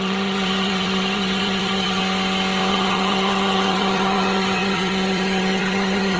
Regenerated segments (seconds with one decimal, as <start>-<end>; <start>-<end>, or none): 0.0-2.0; 2.7-6.2